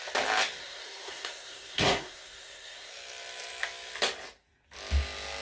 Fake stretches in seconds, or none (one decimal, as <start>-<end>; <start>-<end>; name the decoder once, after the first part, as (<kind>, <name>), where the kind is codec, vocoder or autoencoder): 0.6-2.9 (codec, SNAC)